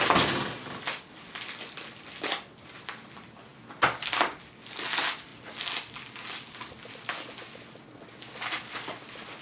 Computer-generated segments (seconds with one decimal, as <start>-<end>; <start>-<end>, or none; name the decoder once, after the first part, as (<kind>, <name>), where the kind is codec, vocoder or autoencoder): none